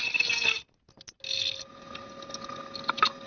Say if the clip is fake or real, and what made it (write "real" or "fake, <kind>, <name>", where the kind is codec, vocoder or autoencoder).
real